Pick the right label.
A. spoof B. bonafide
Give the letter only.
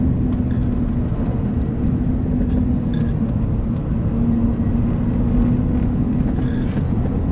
B